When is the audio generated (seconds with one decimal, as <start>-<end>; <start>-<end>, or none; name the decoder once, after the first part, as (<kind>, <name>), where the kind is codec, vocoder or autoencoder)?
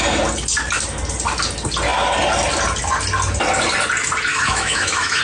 4.3-5.2 (autoencoder, DAC-VAE)